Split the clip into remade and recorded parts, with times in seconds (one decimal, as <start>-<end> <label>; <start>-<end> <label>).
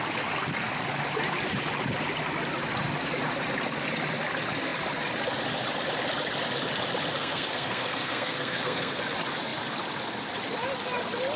0.0-7.2 recorded; 7.2-9.0 remade; 9.0-11.4 recorded